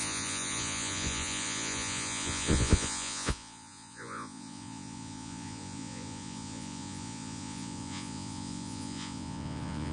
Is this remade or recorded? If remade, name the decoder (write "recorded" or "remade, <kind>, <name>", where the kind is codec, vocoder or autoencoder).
remade, vocoder, Vocos